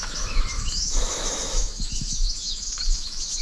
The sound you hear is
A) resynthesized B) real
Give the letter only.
A